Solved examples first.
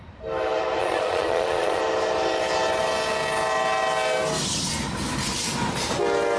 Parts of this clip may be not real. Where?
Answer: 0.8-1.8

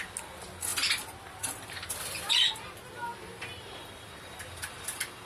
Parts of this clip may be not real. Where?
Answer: 3.1-3.8

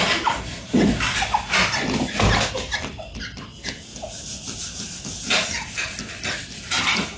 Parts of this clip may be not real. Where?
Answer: none

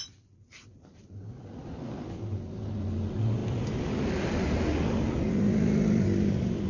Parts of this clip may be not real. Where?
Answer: none